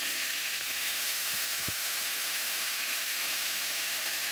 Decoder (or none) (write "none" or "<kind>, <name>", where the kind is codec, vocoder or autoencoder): autoencoder, DAC-VAE